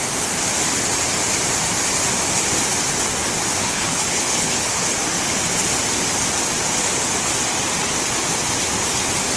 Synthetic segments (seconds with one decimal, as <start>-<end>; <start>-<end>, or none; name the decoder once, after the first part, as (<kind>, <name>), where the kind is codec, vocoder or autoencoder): 3.6-5.0 (codec, HILCodec)

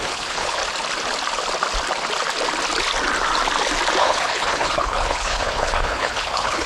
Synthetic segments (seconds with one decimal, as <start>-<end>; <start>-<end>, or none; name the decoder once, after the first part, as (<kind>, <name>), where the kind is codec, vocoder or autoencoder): 0.0-0.6 (codec, HILCodec); 4.0-6.7

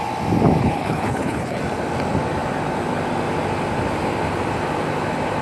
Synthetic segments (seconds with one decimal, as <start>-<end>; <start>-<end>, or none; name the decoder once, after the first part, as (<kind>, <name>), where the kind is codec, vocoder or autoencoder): 0.6-1.6 (codec, HILCodec)

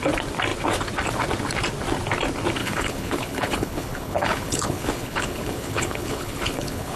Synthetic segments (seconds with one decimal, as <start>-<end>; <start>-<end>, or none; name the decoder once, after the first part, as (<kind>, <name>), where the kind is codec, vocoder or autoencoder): 2.6-7.0 (codec, HILCodec)

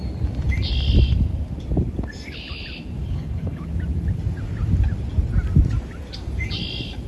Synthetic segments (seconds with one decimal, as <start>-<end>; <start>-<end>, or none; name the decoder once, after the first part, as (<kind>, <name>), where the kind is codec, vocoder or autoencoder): 3.0-3.6 (codec, HILCodec)

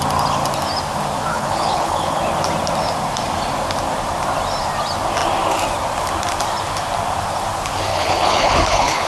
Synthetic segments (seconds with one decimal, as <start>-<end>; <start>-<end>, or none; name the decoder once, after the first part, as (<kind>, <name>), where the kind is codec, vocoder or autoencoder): 1.3-2.2 (codec, HILCodec); 7.9-9.1